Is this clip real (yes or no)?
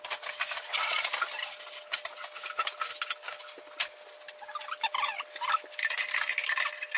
yes